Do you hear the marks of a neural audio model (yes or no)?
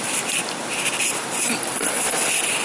yes